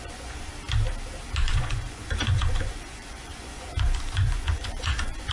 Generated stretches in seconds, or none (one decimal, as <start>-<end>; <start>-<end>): 0.0-0.5; 1.4-5.3